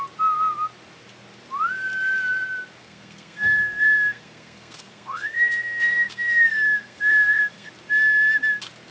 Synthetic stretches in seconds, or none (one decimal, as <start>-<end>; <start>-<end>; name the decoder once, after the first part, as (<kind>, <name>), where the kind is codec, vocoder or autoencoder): 2.8-7.7 (codec, SNAC)

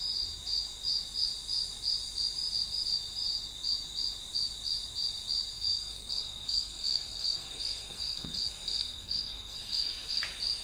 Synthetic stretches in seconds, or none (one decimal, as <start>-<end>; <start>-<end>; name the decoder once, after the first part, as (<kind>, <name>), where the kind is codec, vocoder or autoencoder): 5.5-10.2 (codec, SNAC)

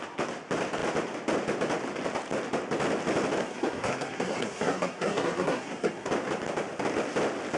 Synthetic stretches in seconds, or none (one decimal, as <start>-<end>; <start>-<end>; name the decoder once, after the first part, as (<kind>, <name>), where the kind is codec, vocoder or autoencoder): 3.4-6.1 (codec, SNAC)

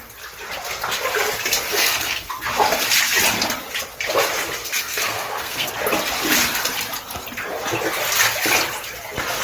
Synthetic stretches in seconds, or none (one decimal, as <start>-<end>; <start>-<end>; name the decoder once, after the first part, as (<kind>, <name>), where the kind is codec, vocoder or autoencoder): 1.7-2.3 (codec, SNAC); 4.6-5.7

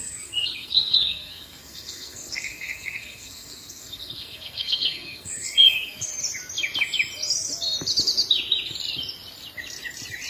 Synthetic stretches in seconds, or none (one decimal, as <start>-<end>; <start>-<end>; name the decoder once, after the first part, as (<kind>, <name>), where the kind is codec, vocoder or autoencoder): 0.0-6.1 (codec, SNAC)

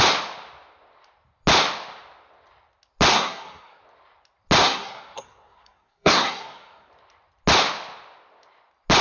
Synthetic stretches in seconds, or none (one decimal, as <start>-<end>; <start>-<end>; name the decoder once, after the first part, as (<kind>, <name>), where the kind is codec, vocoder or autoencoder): 3.1-3.8 (codec, SNAC); 4.6-6.9